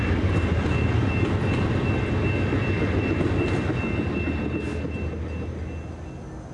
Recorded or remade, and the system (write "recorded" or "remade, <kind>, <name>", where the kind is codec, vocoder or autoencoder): recorded